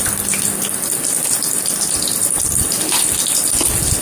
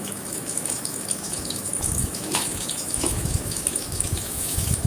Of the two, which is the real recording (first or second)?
first